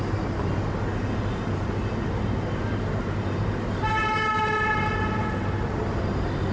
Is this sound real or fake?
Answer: real